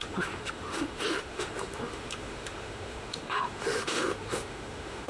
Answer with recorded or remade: remade